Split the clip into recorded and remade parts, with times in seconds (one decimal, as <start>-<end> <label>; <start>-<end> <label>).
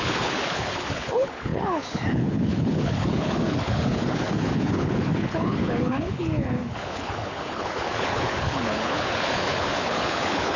0.0-10.6 remade